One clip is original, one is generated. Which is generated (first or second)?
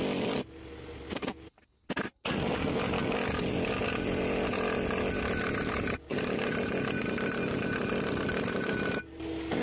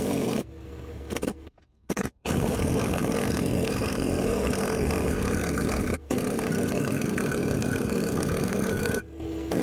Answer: second